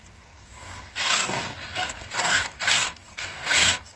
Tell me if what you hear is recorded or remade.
remade